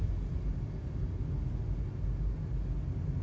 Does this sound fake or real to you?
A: real